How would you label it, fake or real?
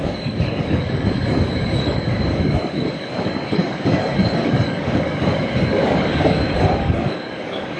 fake